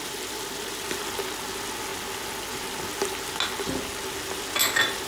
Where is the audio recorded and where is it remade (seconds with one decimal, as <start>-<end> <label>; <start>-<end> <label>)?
0.0-5.1 recorded